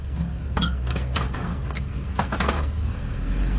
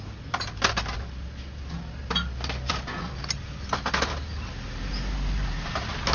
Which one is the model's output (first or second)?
first